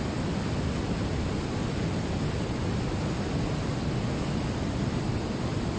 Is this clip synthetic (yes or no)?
no